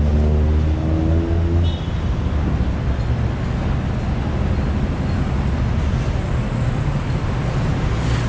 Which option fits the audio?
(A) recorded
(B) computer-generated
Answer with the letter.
A